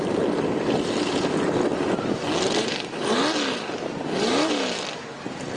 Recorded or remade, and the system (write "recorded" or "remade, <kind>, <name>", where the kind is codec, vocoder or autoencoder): recorded